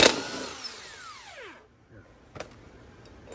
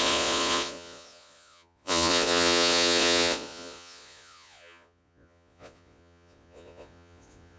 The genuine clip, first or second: first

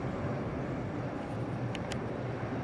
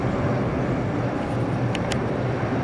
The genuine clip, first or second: second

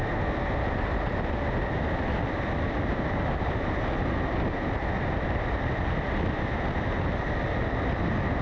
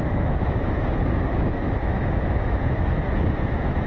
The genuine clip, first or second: first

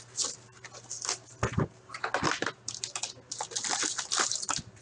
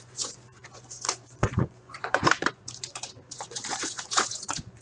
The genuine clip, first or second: first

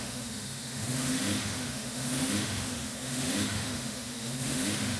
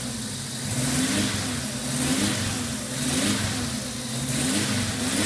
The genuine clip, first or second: second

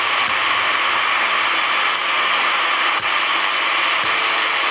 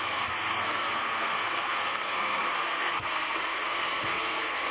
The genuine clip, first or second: first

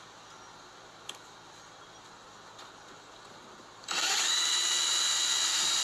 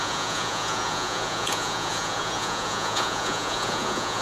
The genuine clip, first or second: first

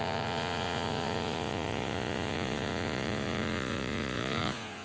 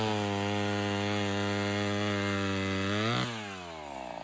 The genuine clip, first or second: second